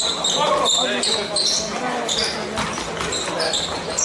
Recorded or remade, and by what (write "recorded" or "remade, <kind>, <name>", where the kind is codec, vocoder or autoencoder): recorded